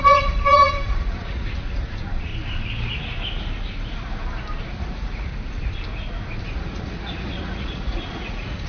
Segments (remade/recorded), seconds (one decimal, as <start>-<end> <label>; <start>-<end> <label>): 0.0-2.3 remade; 2.3-4.6 recorded; 4.6-5.3 remade; 5.3-6.4 recorded; 6.4-8.7 remade